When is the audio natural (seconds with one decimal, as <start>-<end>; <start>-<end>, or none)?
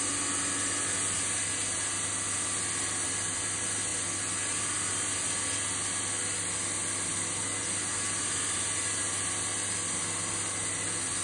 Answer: 0.0-11.2